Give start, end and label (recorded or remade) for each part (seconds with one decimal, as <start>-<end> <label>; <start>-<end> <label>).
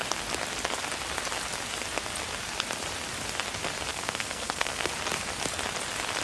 0.0-3.9 recorded; 3.9-4.9 remade; 4.9-6.2 recorded